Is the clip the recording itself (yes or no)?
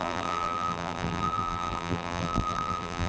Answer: no